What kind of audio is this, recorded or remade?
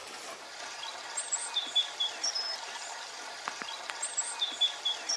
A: recorded